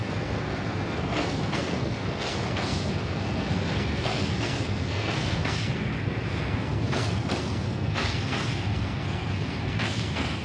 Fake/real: fake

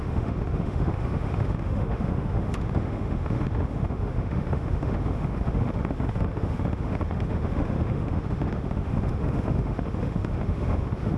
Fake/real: fake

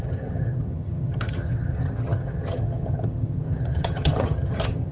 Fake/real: fake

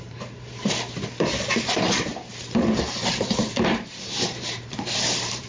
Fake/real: fake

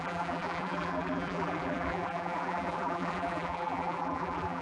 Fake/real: fake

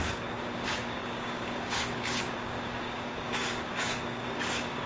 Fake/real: fake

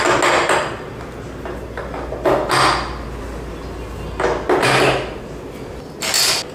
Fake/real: real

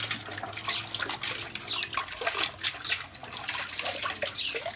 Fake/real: real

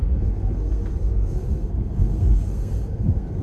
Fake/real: fake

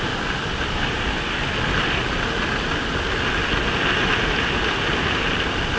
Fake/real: real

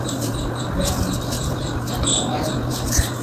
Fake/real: real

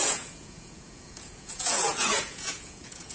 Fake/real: fake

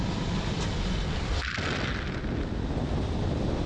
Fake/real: fake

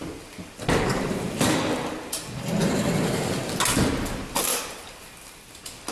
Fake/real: real